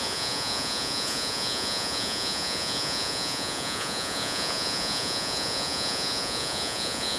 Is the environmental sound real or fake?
fake